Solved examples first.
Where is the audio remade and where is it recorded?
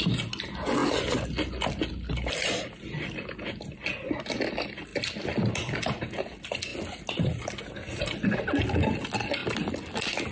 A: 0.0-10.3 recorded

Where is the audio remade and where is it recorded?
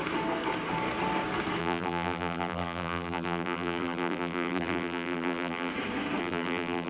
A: 0.0-1.6 recorded; 1.6-5.7 remade; 5.7-6.2 recorded; 6.2-6.9 remade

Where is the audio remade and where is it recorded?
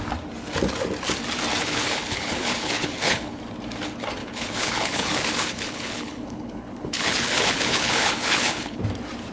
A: 0.0-1.6 recorded; 1.6-3.4 remade; 3.4-4.2 recorded; 4.2-8.8 remade; 8.8-9.3 recorded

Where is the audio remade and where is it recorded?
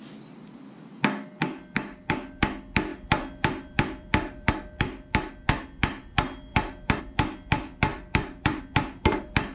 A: 0.0-2.9 recorded; 2.9-4.5 remade; 4.5-6.5 recorded; 6.5-7.0 remade; 7.0-7.9 recorded; 7.9-8.6 remade; 8.6-9.5 recorded